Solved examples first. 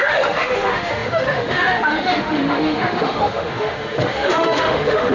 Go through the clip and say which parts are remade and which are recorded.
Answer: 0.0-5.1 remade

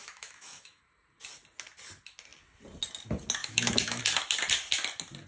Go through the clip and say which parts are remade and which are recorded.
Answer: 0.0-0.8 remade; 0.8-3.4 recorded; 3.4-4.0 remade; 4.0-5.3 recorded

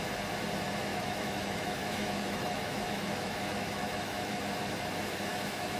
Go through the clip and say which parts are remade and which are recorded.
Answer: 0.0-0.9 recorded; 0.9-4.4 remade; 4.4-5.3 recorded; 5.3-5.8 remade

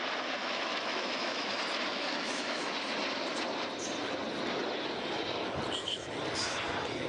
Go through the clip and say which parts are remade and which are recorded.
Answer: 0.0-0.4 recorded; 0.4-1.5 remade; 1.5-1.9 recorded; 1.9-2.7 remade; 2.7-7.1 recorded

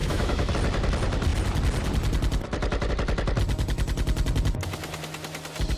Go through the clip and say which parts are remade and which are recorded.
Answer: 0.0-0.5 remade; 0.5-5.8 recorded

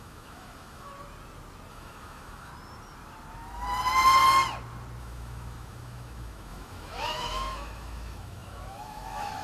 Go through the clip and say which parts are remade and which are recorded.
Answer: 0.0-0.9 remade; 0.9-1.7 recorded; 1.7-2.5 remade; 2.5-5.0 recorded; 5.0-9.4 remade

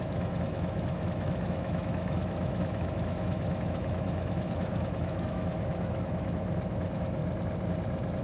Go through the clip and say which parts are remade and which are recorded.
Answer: 0.0-7.2 remade; 7.2-8.2 recorded